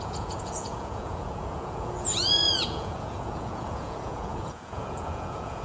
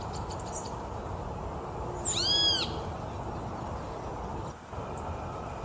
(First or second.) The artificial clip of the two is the first